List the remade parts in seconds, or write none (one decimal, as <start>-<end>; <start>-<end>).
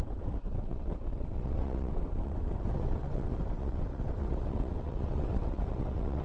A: 0.0-6.2